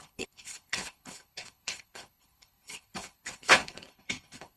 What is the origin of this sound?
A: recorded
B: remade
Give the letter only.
B